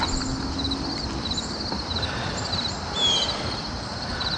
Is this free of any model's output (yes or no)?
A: yes